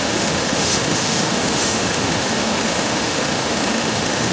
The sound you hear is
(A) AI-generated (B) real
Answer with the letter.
A